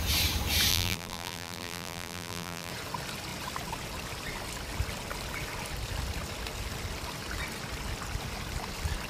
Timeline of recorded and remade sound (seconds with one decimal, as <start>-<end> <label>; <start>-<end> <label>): 0.0-0.7 recorded; 0.7-2.7 remade; 2.7-9.1 recorded